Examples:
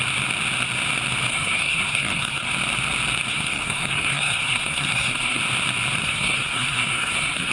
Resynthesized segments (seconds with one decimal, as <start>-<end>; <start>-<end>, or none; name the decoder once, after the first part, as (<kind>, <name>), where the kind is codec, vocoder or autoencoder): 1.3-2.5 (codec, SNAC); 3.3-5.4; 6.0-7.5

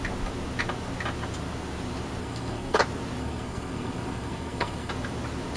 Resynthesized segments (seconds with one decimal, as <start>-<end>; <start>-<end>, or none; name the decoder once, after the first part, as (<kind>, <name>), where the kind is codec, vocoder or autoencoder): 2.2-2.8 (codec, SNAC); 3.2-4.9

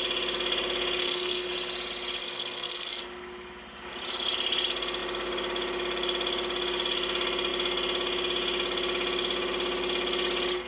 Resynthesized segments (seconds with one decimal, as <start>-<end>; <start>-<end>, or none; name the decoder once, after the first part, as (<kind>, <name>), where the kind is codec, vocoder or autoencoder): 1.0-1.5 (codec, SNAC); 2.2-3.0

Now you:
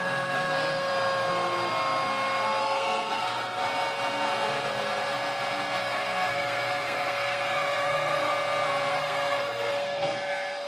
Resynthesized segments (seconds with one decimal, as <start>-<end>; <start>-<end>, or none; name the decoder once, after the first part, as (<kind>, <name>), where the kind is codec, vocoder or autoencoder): 0.0-0.9 (codec, SNAC); 2.6-3.6; 5.8-8.3; 8.9-10.7

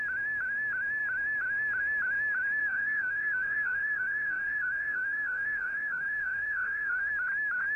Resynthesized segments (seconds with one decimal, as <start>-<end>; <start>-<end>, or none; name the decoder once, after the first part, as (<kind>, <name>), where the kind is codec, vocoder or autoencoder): 2.6-7.1 (codec, SNAC)

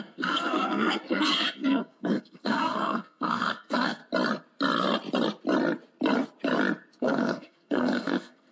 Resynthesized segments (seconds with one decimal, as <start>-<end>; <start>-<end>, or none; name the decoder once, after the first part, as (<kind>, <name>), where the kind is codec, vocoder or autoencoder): 0.0-4.0 (codec, SNAC); 7.0-8.5

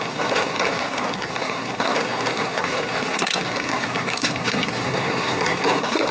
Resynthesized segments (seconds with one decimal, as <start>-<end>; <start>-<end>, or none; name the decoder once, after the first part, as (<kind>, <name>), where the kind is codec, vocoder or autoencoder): 0.0-6.1 (codec, SNAC)

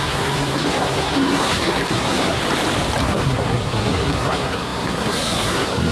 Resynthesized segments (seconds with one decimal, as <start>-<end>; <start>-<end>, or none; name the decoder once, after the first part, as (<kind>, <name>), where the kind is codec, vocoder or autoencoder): 0.0-2.4 (codec, SNAC); 3.0-5.9